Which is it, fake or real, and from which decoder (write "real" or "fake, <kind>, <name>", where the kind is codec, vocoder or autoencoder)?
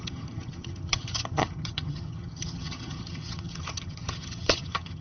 fake, vocoder, HiFi-GAN